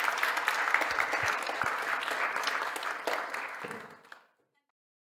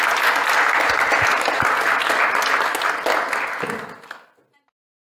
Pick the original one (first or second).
second